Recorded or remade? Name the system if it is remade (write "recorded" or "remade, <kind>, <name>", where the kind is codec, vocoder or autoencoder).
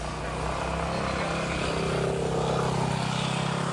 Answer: recorded